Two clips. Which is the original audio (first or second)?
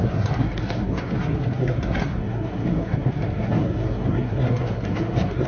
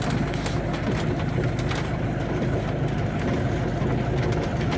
second